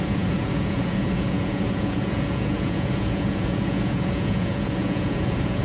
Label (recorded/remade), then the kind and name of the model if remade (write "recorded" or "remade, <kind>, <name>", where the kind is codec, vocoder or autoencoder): remade, vocoder, Vocos